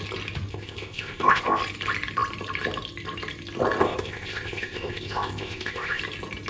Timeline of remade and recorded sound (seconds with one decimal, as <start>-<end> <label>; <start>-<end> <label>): 0.0-0.5 recorded; 0.5-1.6 remade; 1.6-3.8 recorded; 3.8-6.0 remade; 6.0-6.5 recorded